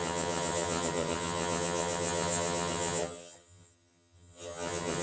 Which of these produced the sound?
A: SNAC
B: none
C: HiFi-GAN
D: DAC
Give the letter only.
C